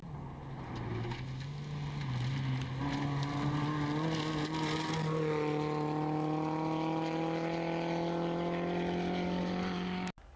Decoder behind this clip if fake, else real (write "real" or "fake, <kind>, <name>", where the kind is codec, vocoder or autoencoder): real